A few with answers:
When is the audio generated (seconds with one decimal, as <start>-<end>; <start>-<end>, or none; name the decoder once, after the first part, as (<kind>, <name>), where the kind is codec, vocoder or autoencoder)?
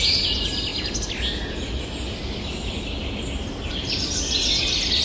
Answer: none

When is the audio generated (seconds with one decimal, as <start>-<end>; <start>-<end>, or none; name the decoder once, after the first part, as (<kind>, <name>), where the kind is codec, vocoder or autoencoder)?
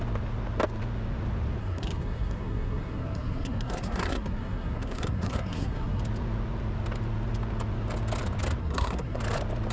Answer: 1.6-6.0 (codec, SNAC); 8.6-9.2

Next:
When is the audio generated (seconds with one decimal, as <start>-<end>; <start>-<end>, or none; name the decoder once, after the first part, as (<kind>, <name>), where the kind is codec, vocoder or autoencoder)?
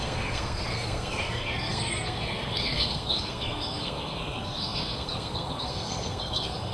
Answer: 0.0-6.7 (codec, SNAC)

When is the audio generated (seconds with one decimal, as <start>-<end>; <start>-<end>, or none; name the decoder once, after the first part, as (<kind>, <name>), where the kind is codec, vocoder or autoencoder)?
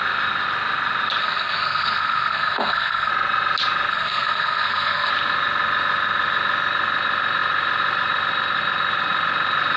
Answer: 1.2-3.1 (codec, SNAC); 3.9-5.1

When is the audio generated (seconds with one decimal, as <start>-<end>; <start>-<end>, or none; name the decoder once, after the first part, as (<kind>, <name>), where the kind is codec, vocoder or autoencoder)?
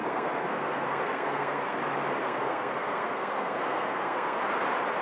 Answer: 0.0-1.8 (codec, SNAC); 2.2-4.4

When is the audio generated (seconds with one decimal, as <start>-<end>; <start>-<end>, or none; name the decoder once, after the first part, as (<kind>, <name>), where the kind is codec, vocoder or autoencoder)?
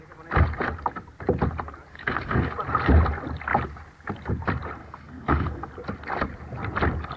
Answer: 1.9-2.5 (codec, SNAC); 4.8-5.7